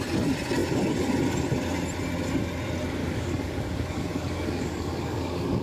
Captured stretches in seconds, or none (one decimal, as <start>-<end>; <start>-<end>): 0.0-3.0